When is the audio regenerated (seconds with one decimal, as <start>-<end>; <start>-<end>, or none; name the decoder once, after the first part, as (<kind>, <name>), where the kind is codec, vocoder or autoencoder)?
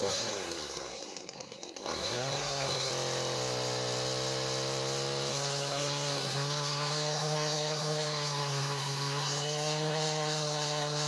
0.0-2.9 (codec, SNAC); 5.3-11.1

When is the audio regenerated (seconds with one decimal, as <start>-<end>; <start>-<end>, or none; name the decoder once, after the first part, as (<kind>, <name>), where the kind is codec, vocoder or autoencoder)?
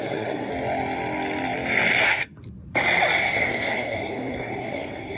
0.0-0.5 (codec, SNAC); 2.0-2.4; 3.2-5.2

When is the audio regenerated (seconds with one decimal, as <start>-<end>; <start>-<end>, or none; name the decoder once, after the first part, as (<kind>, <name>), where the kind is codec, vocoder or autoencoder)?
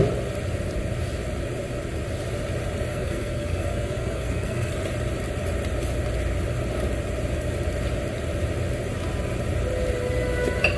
2.9-4.7 (codec, SNAC)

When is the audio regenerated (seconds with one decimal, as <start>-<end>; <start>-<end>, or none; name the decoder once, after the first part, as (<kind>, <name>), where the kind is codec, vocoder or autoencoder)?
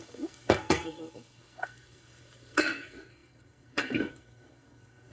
0.0-5.1 (codec, SNAC)